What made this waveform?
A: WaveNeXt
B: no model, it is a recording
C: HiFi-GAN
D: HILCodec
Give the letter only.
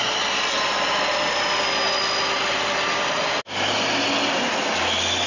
B